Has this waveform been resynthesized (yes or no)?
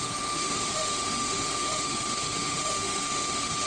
yes